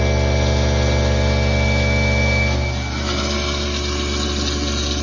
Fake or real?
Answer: real